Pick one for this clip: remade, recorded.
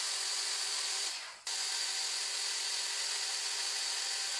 remade